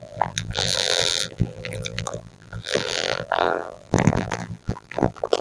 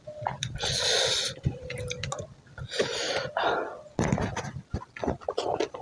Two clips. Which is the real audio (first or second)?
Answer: second